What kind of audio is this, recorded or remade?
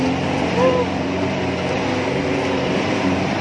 recorded